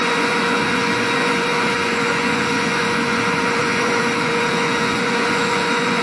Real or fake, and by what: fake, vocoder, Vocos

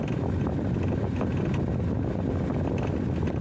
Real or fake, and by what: real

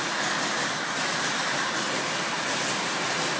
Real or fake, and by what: real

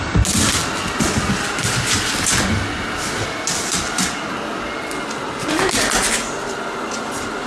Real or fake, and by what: real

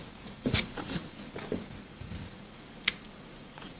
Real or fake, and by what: fake, vocoder, Vocos